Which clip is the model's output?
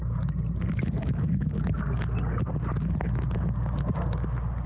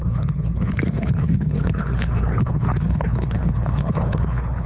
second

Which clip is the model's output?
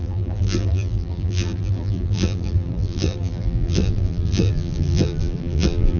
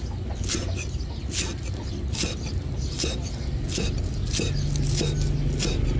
first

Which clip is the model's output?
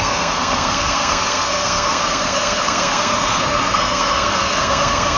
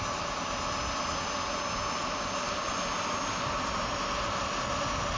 first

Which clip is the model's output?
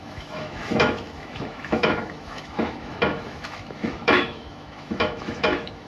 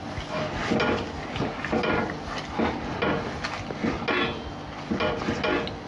first